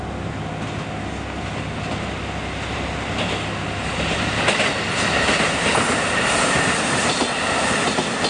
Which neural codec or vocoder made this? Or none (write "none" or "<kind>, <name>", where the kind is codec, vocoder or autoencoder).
none